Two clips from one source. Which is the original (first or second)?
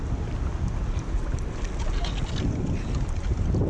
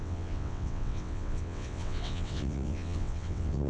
first